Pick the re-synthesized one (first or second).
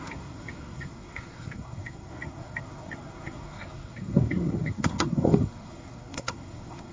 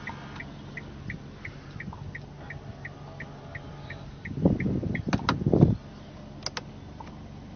first